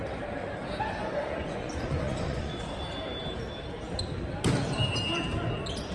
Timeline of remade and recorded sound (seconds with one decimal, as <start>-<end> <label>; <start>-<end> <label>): 0.0-1.0 recorded; 1.0-2.8 remade; 2.8-5.9 recorded